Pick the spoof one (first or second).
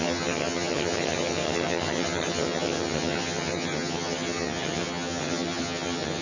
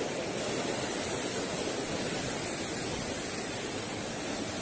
first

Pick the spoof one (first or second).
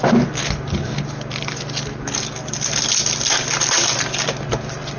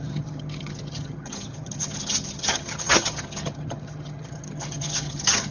second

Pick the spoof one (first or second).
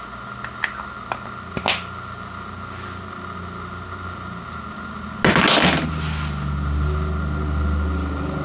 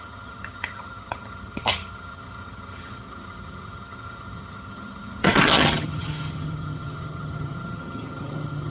second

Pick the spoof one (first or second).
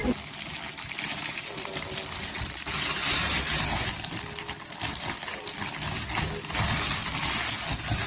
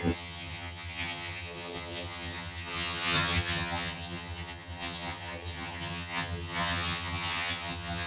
second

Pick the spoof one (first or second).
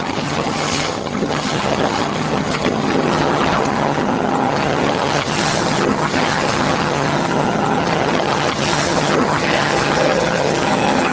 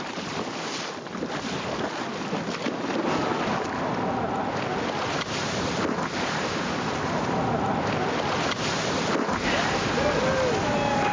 first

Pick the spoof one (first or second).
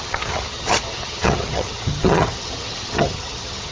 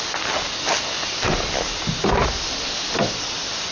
first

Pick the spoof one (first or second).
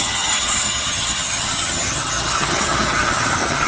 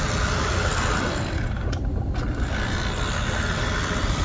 first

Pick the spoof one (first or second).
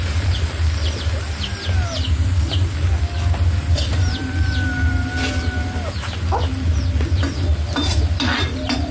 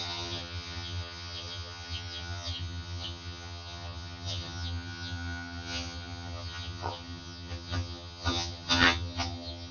second